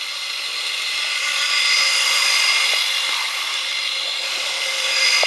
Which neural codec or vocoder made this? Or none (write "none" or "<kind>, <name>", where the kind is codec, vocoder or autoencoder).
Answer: vocoder, BigVGAN v2